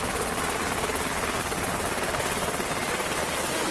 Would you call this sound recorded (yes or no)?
yes